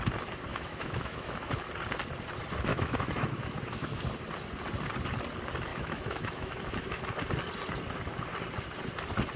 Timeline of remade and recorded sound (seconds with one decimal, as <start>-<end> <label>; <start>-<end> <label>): 0.0-0.5 recorded; 0.5-1.5 remade; 1.5-2.7 recorded; 2.7-4.0 remade; 4.0-5.7 recorded; 5.7-7.0 remade; 7.0-9.4 recorded